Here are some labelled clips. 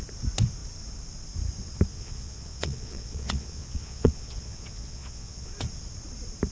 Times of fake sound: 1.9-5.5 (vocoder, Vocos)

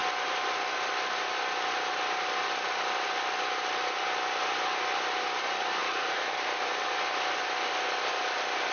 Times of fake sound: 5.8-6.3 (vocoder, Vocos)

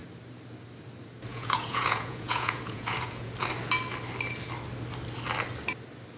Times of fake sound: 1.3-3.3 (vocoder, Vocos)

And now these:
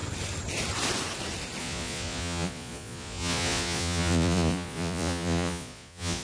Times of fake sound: 1.6-6.2 (vocoder, Vocos)

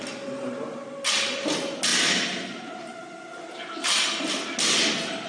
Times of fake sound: none

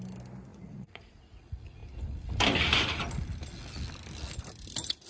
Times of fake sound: 0.5-1.2 (vocoder, Vocos)

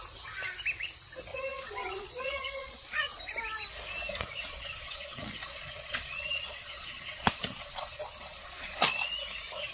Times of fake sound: 1.3-3.2 (vocoder, Vocos); 4.5-9.1

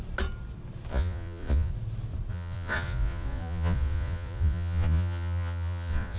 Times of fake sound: 0.9-1.7 (vocoder, Vocos); 2.3-6.2